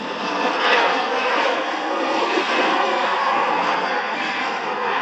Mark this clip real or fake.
fake